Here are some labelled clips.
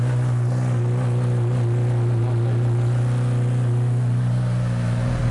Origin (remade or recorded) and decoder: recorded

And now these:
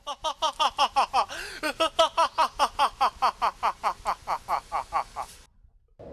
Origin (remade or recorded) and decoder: recorded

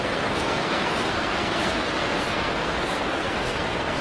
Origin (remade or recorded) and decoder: remade, codec, SNAC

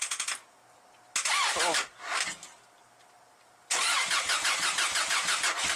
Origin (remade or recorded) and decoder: recorded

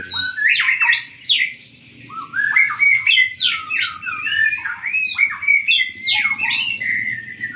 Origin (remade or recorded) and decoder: recorded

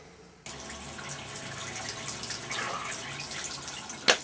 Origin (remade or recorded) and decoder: recorded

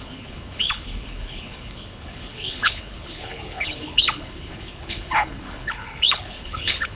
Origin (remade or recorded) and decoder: remade, codec, HILCodec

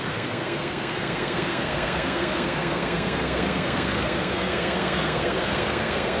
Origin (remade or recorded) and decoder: remade, codec, SNAC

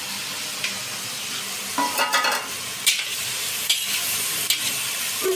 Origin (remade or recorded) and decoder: recorded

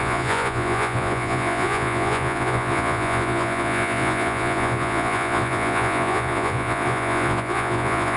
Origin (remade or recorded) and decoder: remade, vocoder, Vocos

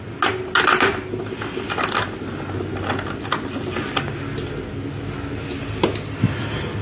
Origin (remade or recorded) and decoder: recorded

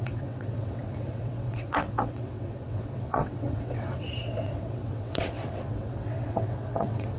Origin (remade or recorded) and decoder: remade, vocoder, WaveNeXt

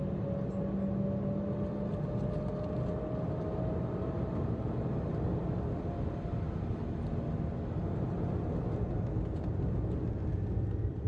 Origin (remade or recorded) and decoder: recorded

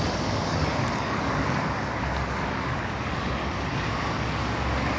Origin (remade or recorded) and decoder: remade, codec, DAC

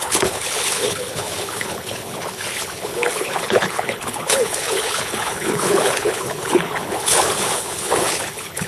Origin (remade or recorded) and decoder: remade, codec, HILCodec